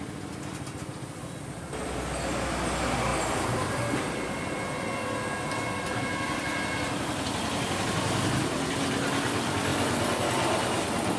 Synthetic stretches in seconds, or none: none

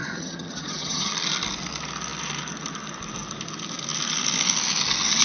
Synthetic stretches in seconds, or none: 0.0-1.1